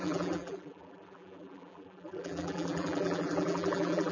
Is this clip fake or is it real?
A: fake